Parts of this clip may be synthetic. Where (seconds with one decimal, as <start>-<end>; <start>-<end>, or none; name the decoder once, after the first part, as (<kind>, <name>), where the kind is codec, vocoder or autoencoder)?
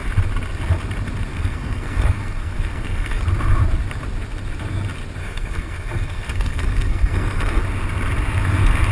1.3-3.2 (codec, SNAC); 5.2-7.6